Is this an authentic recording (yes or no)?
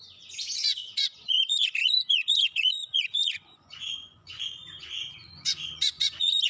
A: no